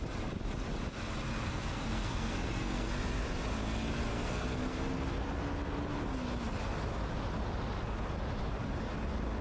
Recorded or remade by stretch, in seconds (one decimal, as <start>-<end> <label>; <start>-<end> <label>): 0.0-1.3 recorded; 1.3-2.9 remade; 2.9-4.1 recorded; 4.1-4.8 remade; 4.8-9.4 recorded